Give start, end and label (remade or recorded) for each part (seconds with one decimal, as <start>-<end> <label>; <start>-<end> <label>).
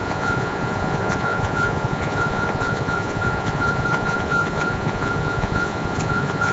0.0-6.5 remade